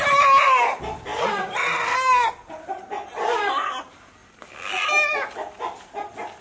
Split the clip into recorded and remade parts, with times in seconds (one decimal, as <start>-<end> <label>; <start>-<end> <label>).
0.0-6.4 recorded